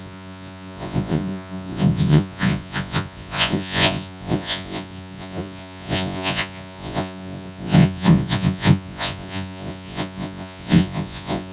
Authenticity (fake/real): fake